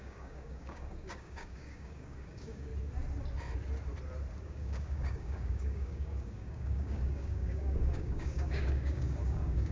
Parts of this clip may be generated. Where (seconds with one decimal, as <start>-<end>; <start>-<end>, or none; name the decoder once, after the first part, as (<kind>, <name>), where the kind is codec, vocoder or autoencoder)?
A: 0.0-2.7 (codec, DAC); 4.4-9.7